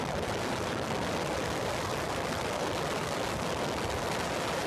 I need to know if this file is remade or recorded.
recorded